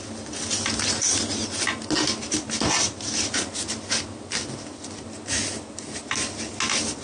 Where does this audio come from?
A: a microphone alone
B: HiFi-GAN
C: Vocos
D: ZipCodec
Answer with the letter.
A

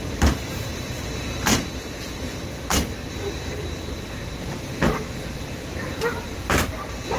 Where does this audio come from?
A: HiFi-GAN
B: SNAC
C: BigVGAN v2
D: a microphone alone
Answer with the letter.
C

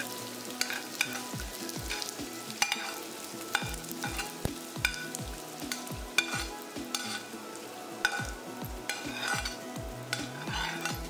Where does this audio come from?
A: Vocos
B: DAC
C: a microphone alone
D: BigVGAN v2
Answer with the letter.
C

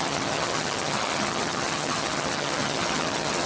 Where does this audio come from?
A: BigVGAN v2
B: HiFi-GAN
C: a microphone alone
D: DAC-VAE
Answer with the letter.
B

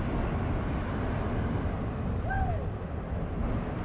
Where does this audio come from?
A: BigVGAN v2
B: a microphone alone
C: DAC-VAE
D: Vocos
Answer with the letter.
B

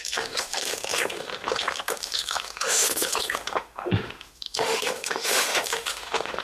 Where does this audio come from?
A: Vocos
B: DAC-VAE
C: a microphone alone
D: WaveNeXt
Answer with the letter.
B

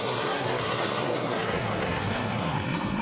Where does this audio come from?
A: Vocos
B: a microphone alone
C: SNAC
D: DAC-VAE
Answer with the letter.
C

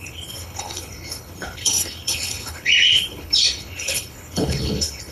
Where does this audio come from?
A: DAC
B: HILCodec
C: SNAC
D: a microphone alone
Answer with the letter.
B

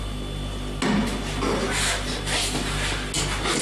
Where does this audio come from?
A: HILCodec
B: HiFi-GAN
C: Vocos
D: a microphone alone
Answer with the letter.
D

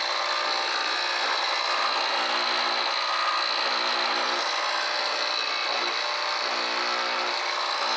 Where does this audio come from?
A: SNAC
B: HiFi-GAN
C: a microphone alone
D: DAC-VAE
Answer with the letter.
C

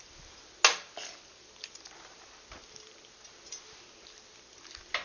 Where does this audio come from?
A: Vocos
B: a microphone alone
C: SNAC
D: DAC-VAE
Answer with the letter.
B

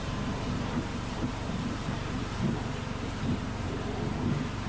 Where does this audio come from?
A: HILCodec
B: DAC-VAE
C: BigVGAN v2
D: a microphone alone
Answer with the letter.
C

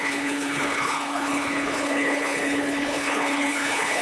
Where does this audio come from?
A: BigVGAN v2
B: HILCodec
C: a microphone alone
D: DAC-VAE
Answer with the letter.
B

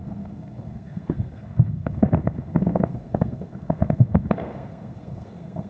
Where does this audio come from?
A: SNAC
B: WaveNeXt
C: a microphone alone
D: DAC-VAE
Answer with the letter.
A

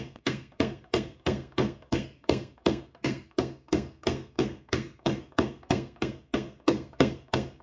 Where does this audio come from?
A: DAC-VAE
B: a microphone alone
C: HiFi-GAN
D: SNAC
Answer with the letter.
D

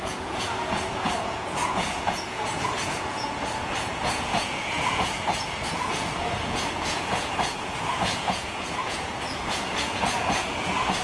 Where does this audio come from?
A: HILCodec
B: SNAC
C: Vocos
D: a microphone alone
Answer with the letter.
C